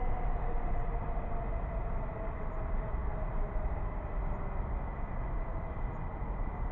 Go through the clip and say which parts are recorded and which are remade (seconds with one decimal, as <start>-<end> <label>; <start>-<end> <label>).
0.0-6.7 recorded